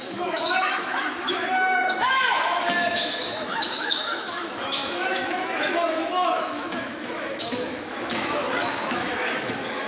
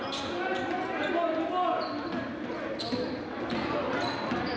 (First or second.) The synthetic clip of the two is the first